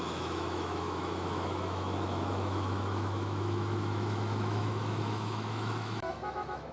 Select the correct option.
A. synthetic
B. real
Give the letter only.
A